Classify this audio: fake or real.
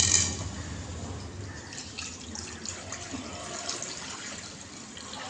real